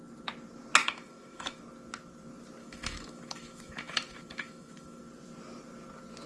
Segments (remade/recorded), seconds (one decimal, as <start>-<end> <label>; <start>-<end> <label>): 0.0-0.8 recorded; 0.8-1.6 remade; 1.6-2.6 recorded; 2.6-5.0 remade; 5.0-6.3 recorded